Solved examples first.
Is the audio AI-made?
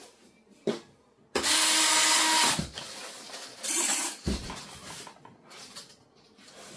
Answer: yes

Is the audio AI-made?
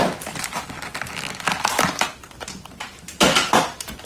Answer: no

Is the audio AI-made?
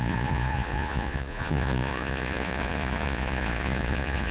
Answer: yes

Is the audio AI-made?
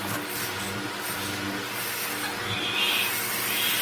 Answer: no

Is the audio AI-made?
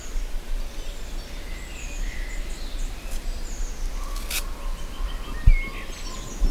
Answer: no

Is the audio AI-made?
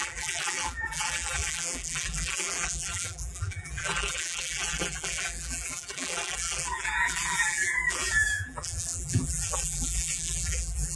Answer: yes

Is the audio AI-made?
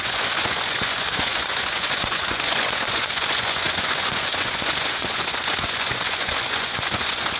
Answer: yes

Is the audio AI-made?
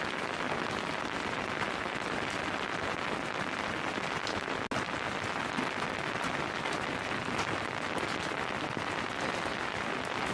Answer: no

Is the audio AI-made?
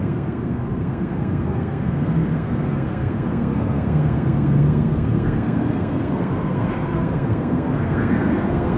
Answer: yes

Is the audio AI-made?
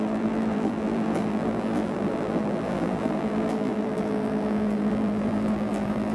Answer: yes